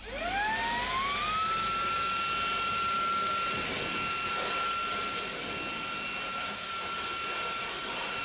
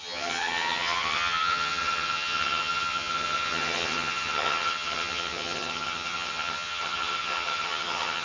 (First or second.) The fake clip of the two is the second